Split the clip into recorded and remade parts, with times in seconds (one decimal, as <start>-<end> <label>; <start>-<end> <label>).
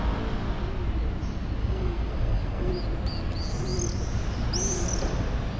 0.0-1.6 recorded; 1.6-2.7 remade; 2.7-5.6 recorded